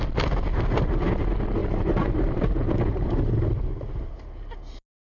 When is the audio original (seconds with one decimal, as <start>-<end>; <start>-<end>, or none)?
0.0-1.6; 3.7-5.1